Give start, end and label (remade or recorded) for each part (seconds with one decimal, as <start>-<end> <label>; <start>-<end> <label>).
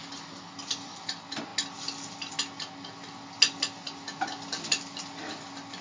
0.0-5.8 recorded